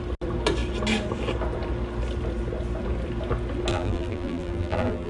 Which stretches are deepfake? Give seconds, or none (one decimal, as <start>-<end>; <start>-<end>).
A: 3.7-5.1